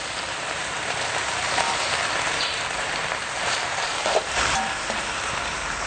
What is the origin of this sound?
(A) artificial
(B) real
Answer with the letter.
A